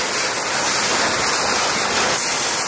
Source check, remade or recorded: recorded